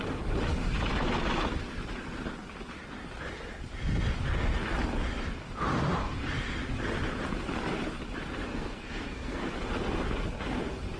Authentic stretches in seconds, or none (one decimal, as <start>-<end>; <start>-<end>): 0.0-8.5; 9.5-11.0